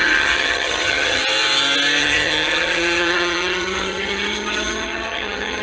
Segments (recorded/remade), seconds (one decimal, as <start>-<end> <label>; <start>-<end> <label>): 0.0-1.2 remade; 1.2-2.0 recorded; 2.0-5.6 remade

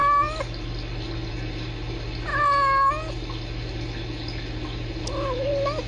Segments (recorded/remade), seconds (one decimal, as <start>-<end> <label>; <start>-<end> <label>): 0.0-5.9 recorded

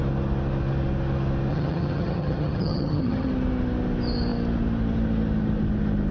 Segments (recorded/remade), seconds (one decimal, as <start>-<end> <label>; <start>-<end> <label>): 0.0-1.5 recorded; 1.5-3.3 remade; 3.3-6.1 recorded

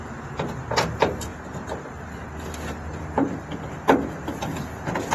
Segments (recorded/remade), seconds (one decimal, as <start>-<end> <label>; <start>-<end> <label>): 0.0-5.1 recorded

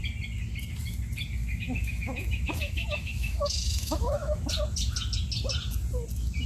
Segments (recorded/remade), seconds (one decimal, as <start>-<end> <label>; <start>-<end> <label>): 0.0-1.4 recorded; 1.4-4.5 remade; 4.5-6.5 recorded